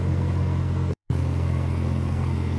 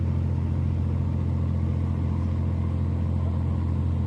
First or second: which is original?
second